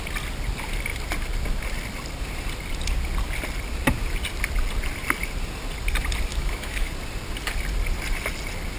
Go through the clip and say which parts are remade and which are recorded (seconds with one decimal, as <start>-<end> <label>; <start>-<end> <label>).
0.0-6.3 recorded; 6.3-6.9 remade; 6.9-8.8 recorded